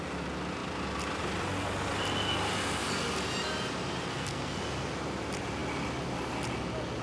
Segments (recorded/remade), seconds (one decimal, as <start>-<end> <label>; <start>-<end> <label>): 0.0-4.1 recorded; 4.1-4.6 remade; 4.6-7.0 recorded